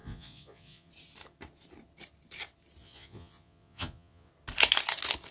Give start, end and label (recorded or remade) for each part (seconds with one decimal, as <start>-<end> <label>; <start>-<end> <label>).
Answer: 0.0-0.9 remade; 0.9-2.8 recorded; 2.8-4.3 remade; 4.3-5.3 recorded